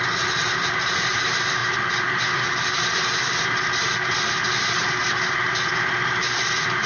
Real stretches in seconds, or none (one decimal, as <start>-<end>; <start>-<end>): 0.0-6.9